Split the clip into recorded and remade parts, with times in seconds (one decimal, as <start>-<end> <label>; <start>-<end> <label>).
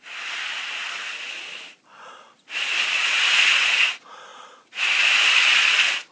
0.0-6.1 recorded